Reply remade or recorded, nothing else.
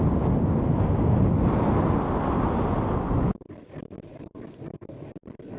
recorded